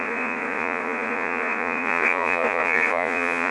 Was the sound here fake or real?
fake